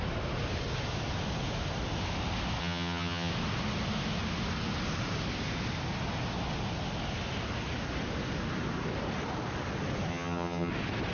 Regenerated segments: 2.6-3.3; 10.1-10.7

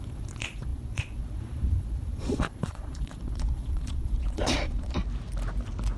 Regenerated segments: 0.0-5.0